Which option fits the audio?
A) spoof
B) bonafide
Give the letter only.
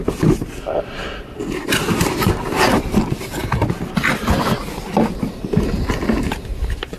B